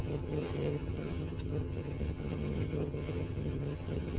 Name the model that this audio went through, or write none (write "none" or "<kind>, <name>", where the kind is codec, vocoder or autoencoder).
vocoder, HiFi-GAN